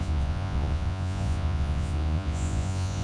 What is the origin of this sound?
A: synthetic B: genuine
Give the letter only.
A